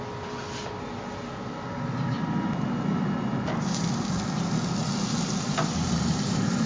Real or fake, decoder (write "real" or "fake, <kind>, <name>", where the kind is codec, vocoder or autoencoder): real